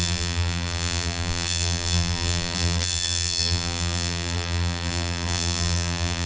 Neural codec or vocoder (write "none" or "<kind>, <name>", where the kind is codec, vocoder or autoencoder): vocoder, BigVGAN v2